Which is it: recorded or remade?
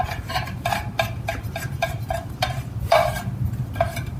recorded